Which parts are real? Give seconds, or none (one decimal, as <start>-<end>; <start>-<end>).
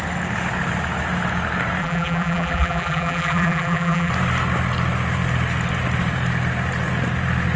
0.0-1.8; 4.1-7.6